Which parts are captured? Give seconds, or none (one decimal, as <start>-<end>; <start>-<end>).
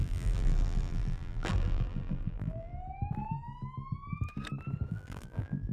2.7-4.9